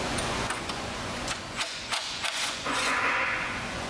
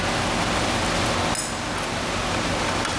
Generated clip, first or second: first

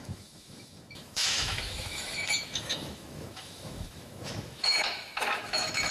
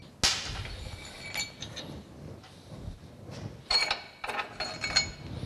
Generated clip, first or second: first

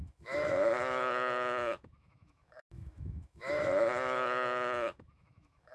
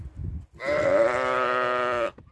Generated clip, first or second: first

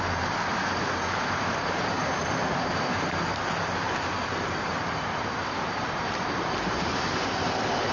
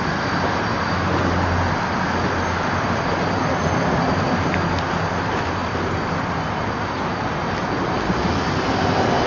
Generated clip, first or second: first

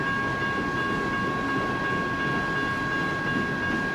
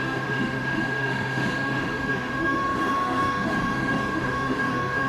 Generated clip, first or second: second